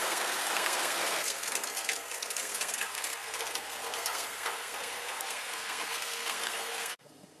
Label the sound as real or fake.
fake